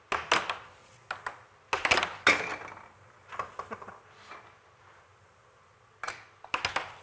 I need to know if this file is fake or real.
real